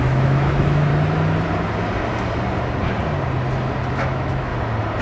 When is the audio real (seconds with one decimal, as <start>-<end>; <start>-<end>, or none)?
0.9-3.9; 4.5-5.0